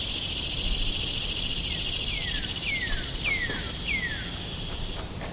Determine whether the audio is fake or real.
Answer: real